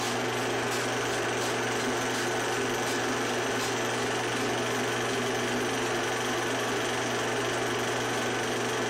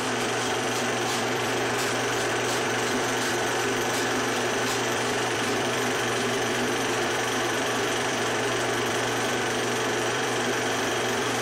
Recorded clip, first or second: first